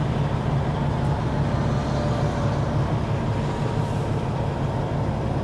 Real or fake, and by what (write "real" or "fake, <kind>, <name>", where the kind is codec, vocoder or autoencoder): real